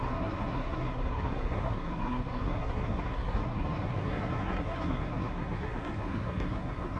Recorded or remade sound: remade